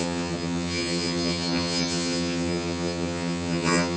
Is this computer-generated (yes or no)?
yes